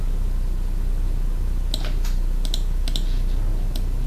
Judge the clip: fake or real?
real